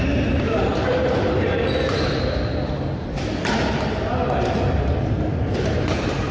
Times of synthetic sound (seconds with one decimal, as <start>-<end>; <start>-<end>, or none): 0.0-4.2; 5.1-6.3